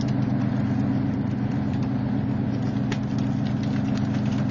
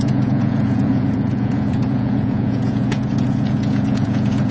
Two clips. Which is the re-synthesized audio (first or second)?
second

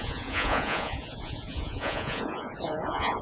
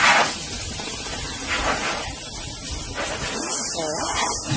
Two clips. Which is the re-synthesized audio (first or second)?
first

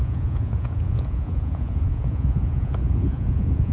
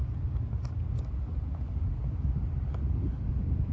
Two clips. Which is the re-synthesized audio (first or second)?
first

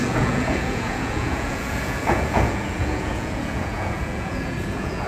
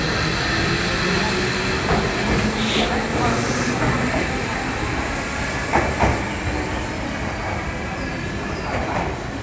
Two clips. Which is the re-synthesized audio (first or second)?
first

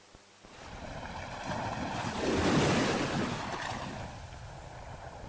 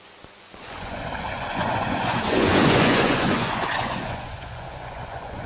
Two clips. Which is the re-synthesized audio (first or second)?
second